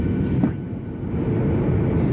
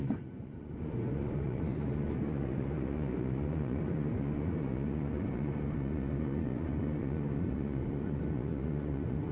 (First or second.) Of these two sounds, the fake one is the second